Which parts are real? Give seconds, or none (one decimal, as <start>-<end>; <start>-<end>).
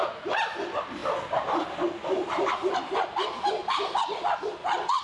0.0-5.0